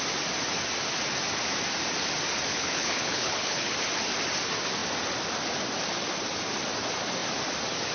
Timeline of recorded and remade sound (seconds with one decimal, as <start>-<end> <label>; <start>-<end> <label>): 0.0-2.5 recorded; 2.5-3.7 remade; 3.7-7.9 recorded